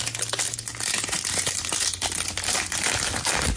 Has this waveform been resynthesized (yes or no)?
no